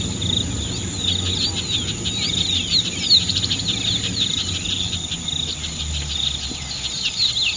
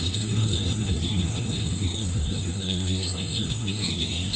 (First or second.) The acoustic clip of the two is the first